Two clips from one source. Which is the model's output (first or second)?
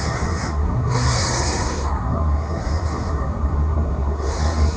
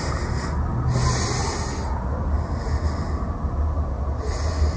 first